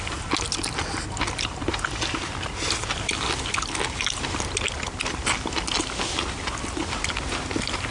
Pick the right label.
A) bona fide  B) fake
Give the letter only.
A